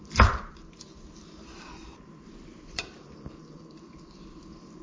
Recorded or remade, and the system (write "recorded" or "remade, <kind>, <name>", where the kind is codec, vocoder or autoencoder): remade, vocoder, BigVGAN v2